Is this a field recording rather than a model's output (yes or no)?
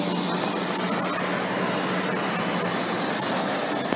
yes